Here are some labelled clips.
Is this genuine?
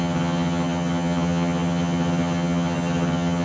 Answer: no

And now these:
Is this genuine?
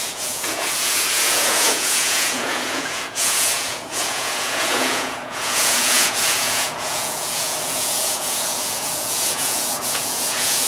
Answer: no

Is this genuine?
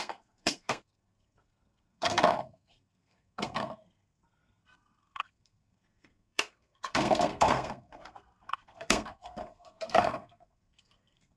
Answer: no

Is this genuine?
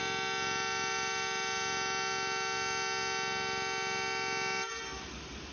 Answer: yes